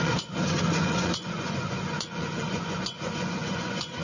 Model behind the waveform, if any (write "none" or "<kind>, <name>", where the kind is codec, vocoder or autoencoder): vocoder, Vocos